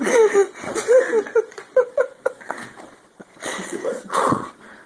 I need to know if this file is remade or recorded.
remade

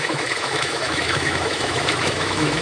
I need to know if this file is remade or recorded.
remade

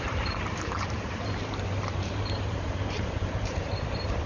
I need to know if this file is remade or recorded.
remade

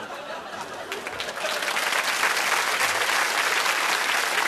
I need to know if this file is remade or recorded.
recorded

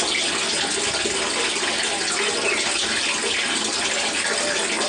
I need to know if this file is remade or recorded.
recorded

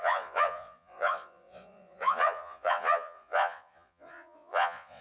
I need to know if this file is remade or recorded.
remade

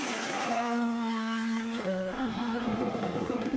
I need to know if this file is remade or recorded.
remade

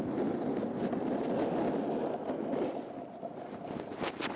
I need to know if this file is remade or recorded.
recorded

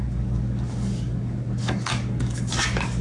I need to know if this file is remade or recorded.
remade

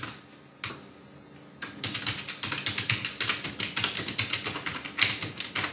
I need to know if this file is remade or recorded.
recorded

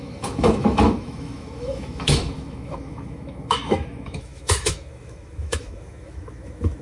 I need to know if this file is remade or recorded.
remade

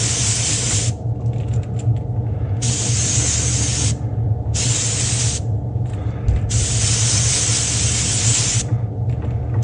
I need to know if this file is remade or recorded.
recorded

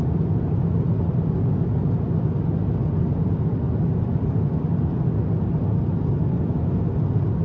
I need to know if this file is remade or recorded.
recorded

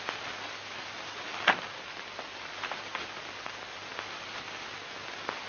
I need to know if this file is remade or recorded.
recorded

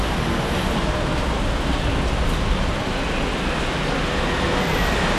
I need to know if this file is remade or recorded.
recorded